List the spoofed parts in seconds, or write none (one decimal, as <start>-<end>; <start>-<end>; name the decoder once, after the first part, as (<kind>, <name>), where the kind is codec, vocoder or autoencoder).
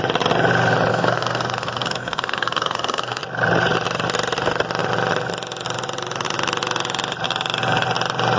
0.9-3.2 (codec, SNAC)